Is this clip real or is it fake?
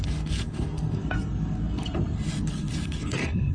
fake